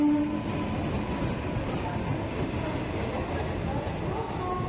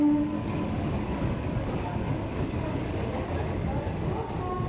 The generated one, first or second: second